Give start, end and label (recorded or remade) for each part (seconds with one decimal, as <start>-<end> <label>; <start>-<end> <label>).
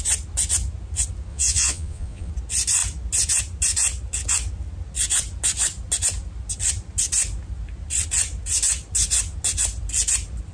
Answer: 0.0-1.3 recorded; 1.3-2.3 remade; 2.3-10.5 recorded